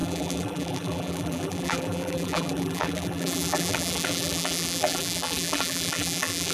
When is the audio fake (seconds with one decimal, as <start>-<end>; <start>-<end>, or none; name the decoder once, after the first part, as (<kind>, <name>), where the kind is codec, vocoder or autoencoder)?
0.0-6.5 (vocoder, BigVGAN v2)